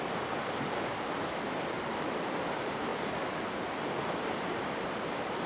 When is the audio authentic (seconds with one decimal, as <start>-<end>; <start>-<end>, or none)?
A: 0.0-5.5